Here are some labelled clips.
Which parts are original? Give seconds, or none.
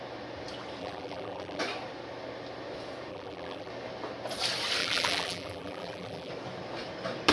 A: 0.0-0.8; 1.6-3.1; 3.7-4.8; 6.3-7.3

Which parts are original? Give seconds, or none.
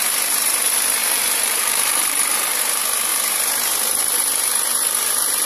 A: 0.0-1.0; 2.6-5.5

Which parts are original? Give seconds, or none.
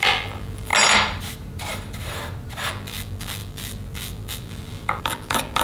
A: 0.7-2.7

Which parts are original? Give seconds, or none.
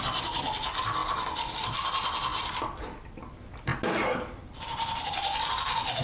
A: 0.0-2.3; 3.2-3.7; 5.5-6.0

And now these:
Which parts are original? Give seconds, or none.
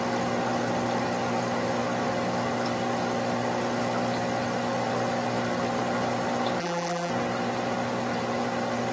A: 0.0-6.6; 7.1-8.9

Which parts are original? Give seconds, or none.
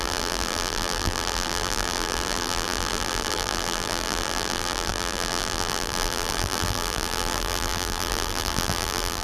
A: none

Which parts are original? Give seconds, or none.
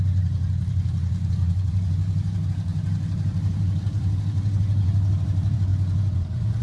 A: none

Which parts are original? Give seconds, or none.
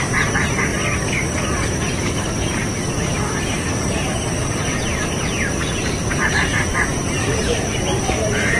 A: 0.7-1.3; 2.6-3.5